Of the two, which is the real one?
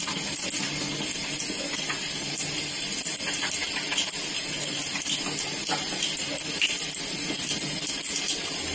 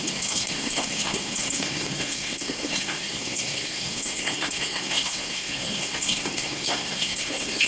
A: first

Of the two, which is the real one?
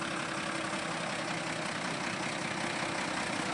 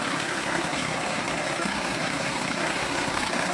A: first